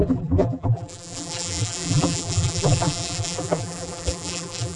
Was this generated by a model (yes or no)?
yes